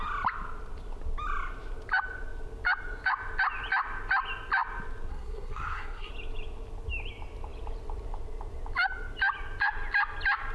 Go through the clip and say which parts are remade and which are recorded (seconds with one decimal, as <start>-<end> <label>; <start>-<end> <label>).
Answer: 0.0-5.1 recorded; 5.1-6.1 remade; 6.1-10.5 recorded